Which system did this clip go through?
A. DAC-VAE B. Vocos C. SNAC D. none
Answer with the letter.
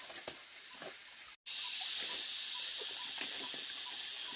D